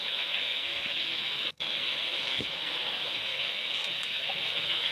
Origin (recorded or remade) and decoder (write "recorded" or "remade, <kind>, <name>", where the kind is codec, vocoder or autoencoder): remade, codec, SNAC